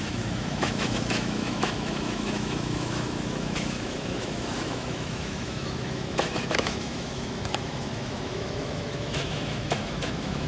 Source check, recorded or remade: remade